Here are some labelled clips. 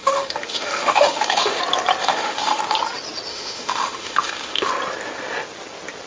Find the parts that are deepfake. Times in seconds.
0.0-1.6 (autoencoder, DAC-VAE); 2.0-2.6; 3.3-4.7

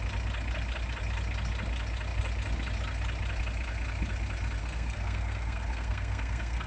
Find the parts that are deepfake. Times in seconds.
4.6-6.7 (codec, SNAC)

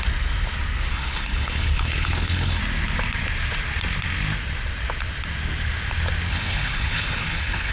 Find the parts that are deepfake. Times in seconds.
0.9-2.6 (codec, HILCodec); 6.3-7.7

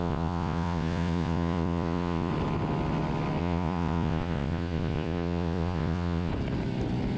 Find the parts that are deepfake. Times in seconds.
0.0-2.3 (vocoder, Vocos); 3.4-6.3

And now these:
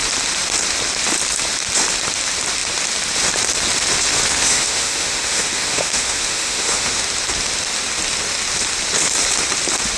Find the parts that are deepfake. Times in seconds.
4.3-7.0 (autoencoder, DAC-VAE)

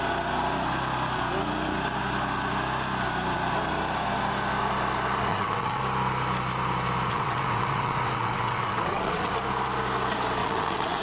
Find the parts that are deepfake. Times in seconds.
5.3-5.8 (vocoder, WaveNeXt); 7.1-9.3; 10.4-11.0

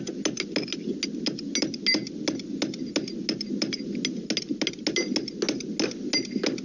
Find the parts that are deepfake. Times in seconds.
none